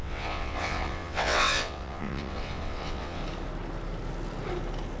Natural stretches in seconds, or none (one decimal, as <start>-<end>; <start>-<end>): 3.2-5.0